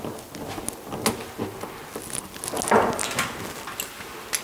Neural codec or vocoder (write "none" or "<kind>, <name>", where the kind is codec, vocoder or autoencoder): none